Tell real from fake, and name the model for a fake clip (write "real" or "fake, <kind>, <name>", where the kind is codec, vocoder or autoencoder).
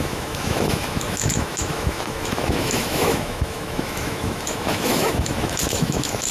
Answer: fake, autoencoder, DAC-VAE